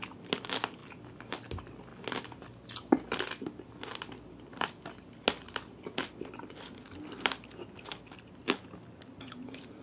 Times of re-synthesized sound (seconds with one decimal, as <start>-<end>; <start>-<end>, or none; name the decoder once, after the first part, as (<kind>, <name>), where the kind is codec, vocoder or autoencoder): none